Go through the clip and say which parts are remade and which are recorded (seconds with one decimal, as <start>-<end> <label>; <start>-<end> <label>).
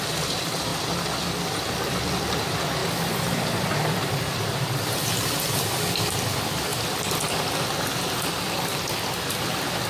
0.0-0.7 remade; 0.7-2.4 recorded; 2.4-2.8 remade; 2.8-3.4 recorded; 3.4-9.9 remade